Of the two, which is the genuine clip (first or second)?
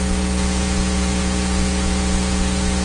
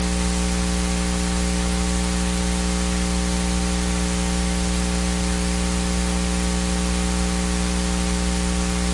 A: second